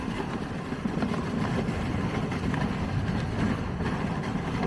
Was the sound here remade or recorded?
recorded